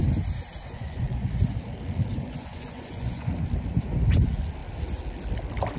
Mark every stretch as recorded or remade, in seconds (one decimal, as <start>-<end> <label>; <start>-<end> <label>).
0.0-0.6 recorded; 0.6-1.5 remade; 1.5-2.1 recorded; 2.1-3.3 remade; 3.3-5.8 recorded